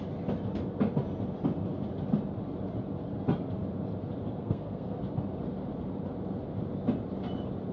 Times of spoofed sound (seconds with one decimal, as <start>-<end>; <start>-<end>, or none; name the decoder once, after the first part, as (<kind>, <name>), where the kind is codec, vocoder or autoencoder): 4.4-5.0 (codec, SNAC)